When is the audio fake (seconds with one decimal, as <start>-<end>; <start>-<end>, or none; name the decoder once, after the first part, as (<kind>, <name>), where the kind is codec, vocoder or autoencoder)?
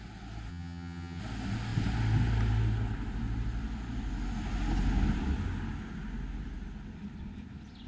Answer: 0.5-1.2 (vocoder, HiFi-GAN)